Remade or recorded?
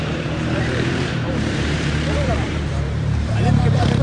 remade